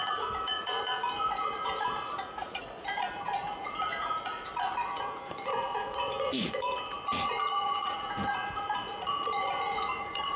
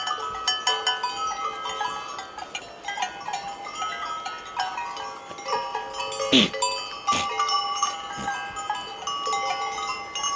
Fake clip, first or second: first